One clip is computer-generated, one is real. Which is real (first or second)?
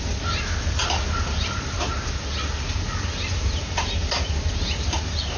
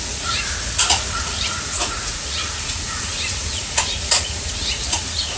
first